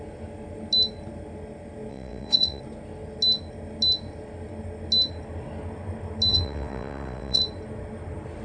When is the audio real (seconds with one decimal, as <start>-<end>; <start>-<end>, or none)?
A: 0.0-1.9; 2.6-6.3; 7.4-8.4